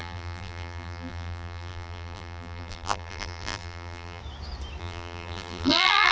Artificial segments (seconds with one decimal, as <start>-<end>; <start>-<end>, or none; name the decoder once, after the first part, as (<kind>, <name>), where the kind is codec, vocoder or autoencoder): 0.0-4.2 (vocoder, BigVGAN v2); 4.8-6.1